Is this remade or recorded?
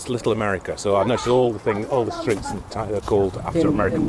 remade